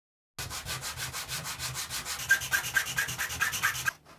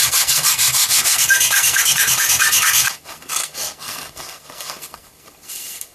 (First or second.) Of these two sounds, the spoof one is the second